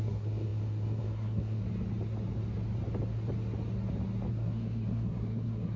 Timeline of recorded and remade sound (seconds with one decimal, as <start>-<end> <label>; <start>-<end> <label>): 0.0-1.6 remade; 1.6-4.3 recorded; 4.3-5.8 remade